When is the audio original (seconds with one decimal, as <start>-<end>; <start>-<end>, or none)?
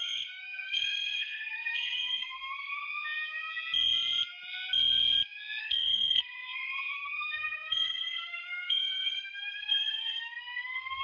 2.9-5.6